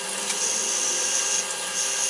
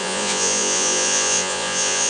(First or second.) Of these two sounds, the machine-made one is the second